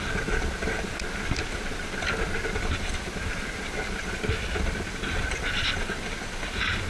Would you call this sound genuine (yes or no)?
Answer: yes